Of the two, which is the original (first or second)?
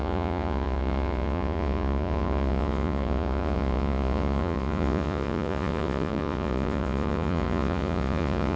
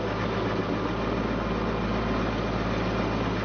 second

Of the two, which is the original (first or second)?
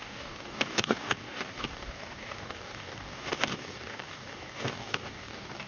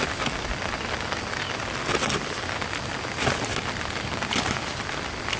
second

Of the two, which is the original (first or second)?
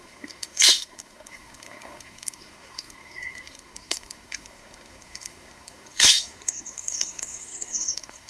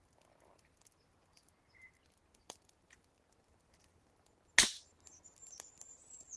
second